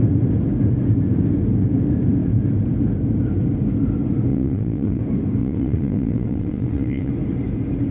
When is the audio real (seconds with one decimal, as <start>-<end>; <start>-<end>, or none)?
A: 0.0-4.3; 5.0-5.4; 7.1-7.9